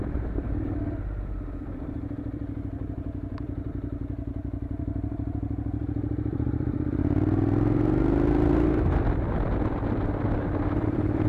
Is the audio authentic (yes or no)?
no